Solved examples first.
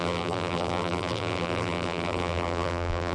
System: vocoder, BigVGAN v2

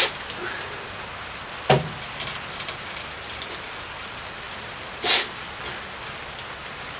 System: none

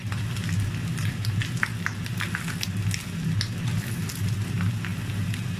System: none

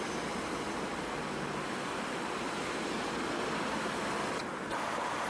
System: vocoder, BigVGAN v2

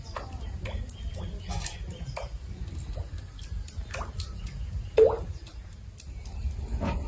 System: none